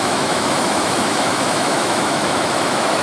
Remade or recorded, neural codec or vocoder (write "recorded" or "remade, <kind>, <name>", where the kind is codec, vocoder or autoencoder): remade, autoencoder, DAC-VAE